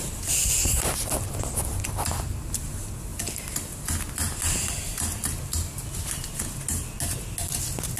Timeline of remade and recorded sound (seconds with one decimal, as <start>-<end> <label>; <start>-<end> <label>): 0.0-8.0 recorded